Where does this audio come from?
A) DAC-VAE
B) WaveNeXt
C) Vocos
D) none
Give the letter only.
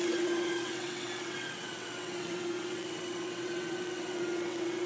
B